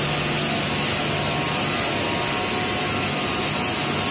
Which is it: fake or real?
real